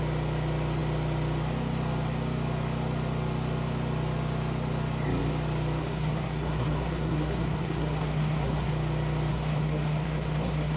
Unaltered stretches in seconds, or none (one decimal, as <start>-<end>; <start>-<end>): 0.0-5.8; 8.7-9.3